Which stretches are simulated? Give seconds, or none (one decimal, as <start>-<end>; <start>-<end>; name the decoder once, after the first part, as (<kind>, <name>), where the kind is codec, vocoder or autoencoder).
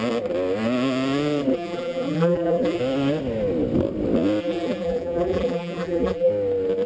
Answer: 1.5-2.8 (vocoder, BigVGAN v2); 4.4-6.3